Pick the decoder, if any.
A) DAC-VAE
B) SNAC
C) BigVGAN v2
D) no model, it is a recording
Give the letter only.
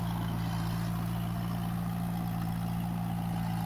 D